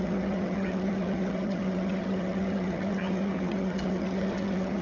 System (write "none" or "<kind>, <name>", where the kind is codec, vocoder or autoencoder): vocoder, HiFi-GAN